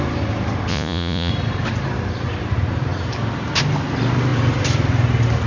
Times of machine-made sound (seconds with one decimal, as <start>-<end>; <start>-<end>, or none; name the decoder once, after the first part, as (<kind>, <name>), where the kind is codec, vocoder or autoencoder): 0.7-1.3 (vocoder, Vocos)